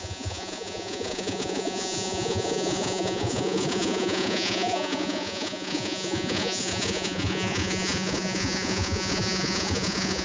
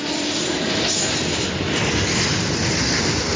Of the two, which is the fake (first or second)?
first